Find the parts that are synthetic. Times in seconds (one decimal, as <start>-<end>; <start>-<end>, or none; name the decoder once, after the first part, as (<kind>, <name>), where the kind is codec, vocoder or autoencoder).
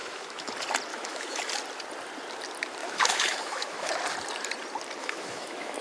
0.0-0.5 (autoencoder, DAC-VAE); 0.9-1.4; 2.8-3.9; 5.0-5.8